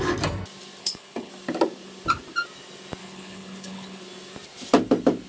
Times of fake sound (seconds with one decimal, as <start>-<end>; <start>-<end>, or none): 0.8-1.3; 3.0-4.0